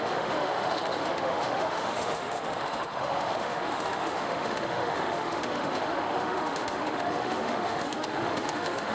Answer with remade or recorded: remade